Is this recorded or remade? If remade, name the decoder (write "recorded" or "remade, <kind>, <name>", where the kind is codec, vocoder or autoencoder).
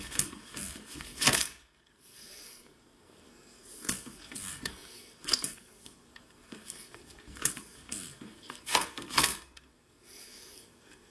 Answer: remade, codec, SNAC